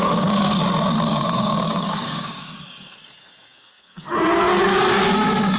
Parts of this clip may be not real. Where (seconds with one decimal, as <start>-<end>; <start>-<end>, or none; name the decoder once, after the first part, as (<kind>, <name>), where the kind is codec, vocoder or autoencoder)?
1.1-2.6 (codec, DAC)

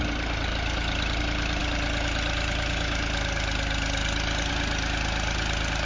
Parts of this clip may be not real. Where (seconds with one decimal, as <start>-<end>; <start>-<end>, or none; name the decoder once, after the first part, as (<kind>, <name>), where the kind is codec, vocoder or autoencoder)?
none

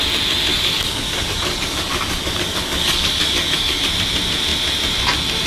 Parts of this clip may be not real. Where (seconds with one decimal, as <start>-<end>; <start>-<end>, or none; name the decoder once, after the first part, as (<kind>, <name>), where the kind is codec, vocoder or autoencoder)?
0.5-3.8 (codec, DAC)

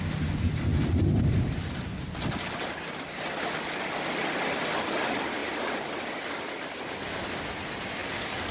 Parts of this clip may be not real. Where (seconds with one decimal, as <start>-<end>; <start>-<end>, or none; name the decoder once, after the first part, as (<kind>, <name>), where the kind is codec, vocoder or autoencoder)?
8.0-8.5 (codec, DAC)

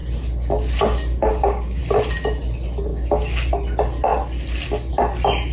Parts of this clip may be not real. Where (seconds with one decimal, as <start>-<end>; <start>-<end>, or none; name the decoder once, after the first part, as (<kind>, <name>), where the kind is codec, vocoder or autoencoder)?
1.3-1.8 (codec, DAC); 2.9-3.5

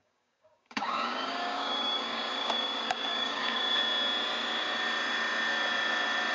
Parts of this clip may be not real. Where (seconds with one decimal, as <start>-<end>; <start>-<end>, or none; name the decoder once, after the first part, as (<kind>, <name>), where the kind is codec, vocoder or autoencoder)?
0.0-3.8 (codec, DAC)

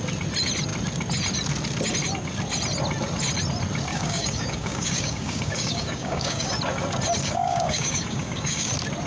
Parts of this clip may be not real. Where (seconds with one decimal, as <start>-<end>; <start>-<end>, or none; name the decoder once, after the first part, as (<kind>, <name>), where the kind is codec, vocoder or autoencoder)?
3.9-6.5 (codec, DAC); 7.2-8.7

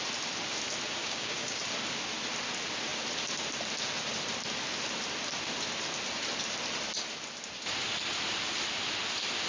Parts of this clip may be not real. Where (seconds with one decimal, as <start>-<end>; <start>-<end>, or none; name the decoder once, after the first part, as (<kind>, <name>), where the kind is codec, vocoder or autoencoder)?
1.0-1.6 (codec, DAC)